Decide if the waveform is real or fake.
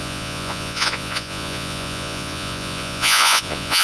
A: fake